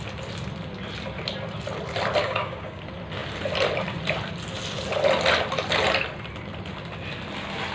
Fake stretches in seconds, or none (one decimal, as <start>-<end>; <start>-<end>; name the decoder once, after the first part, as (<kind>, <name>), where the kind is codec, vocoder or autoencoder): 2.2-2.8 (codec, DAC)